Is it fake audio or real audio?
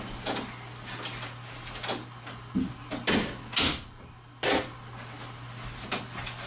real